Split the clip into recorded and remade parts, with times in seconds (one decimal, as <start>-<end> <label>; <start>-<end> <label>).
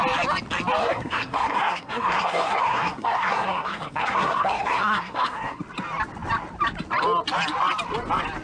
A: 0.0-0.8 recorded; 0.8-5.6 remade; 5.6-8.4 recorded